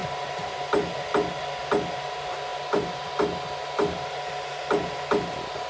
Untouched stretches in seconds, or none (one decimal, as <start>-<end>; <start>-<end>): 0.0-5.7